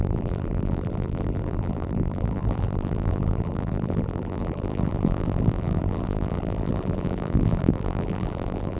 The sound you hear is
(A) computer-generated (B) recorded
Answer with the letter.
A